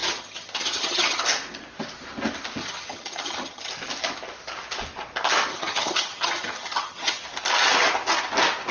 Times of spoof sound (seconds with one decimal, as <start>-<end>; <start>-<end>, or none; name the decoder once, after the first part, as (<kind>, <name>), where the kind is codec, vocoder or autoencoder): 0.0-1.2 (vocoder, HiFi-GAN); 2.6-3.7; 5.5-7.2